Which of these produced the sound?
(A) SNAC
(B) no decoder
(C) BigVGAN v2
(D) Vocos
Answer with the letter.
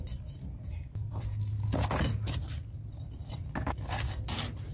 C